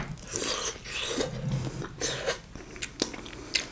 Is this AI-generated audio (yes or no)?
no